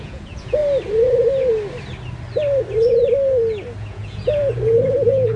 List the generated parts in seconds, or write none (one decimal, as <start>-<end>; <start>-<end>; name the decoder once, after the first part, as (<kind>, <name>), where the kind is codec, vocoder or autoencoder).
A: 0.0-0.6 (vocoder, Vocos); 3.8-5.4